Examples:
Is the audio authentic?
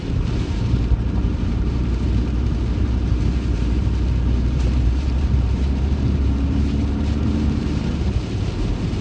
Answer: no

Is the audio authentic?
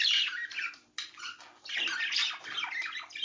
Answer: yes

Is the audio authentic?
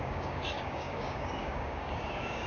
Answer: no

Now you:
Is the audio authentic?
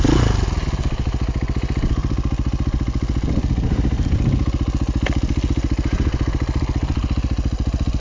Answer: yes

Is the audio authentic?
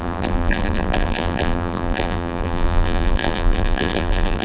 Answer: no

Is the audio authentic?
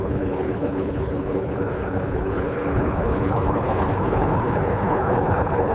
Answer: no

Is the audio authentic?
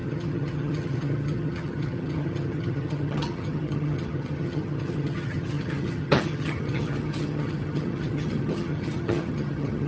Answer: no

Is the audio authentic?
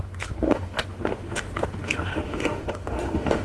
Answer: no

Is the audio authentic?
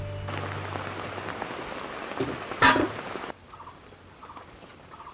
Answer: yes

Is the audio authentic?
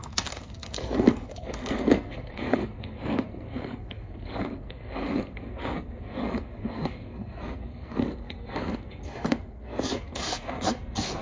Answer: no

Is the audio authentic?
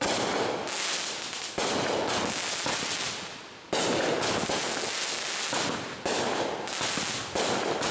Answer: yes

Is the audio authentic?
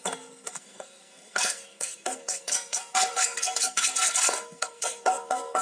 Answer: no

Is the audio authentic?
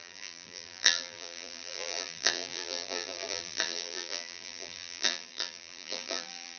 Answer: no